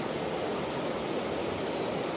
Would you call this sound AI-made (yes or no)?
no